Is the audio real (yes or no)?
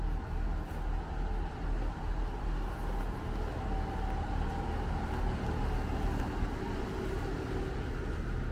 yes